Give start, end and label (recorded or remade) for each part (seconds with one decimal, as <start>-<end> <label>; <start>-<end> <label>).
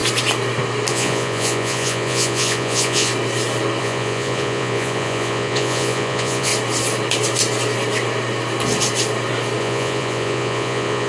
0.0-0.9 recorded; 0.9-3.1 remade; 3.1-3.8 recorded; 3.8-6.5 remade; 6.5-9.6 recorded; 9.6-11.1 remade